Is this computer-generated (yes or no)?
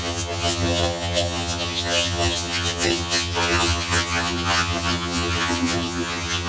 yes